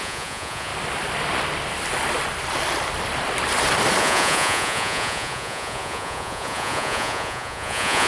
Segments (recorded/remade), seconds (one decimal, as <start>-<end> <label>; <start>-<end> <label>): 0.0-0.7 remade; 0.7-4.0 recorded; 4.0-8.1 remade